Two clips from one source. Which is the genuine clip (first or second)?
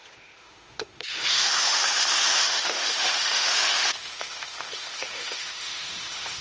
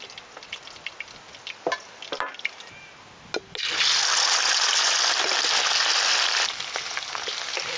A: second